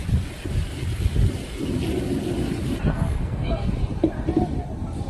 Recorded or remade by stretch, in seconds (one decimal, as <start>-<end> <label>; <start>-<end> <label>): 0.0-2.9 recorded; 2.9-3.7 remade; 3.7-5.1 recorded